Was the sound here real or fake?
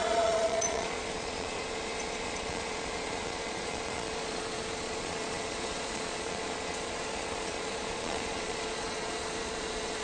fake